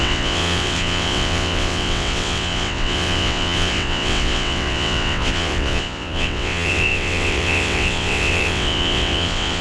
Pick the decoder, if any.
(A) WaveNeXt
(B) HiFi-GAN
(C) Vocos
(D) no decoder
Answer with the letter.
A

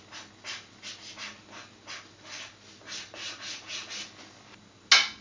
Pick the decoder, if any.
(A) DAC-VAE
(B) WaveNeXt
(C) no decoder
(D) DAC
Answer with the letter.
C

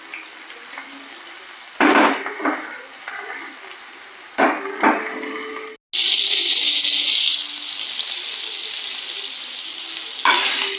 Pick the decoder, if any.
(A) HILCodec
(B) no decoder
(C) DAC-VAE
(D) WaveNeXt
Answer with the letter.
B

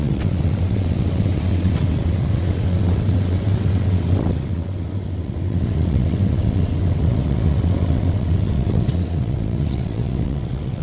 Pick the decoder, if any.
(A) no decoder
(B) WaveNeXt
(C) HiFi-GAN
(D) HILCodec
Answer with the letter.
B